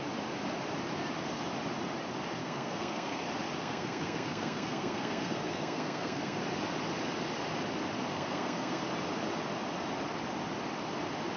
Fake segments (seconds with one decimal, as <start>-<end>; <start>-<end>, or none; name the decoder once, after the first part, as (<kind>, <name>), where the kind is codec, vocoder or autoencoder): 2.4-3.2 (codec, SNAC); 3.6-6.4; 8.1-8.8